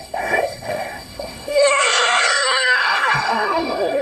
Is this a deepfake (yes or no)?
yes